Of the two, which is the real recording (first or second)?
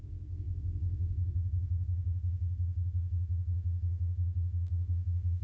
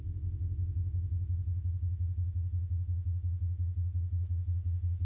second